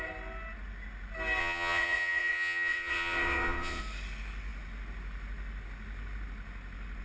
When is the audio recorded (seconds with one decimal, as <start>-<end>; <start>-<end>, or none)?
0.0-1.4; 3.8-7.0